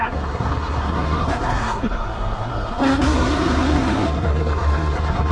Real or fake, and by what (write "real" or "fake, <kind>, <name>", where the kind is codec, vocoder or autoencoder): fake, codec, SNAC